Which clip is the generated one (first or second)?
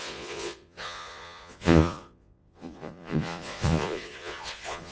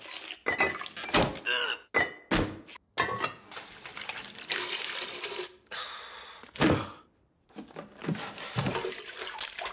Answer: first